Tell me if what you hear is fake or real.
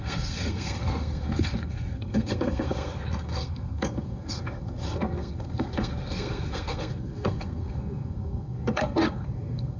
fake